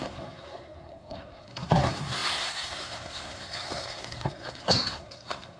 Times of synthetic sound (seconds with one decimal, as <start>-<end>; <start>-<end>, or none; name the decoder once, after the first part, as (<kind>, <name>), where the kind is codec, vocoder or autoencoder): 0.0-5.6 (codec, SNAC)